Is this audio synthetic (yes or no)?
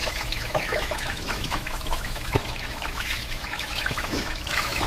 yes